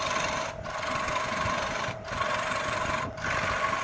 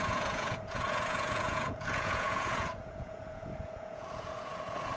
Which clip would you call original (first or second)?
first